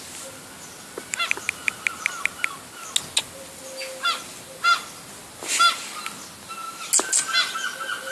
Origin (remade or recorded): recorded